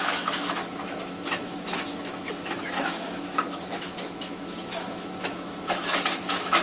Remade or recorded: remade